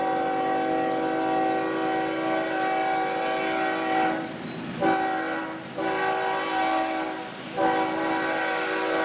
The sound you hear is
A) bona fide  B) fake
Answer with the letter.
A